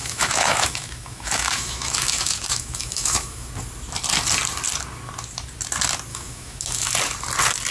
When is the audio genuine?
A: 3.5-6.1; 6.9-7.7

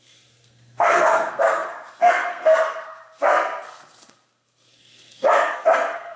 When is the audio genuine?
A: none

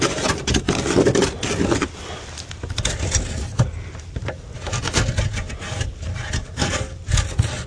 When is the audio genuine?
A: 0.0-7.7

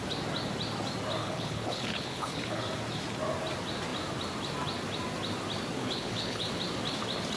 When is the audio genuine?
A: 0.0-1.2; 2.6-5.8; 6.6-7.4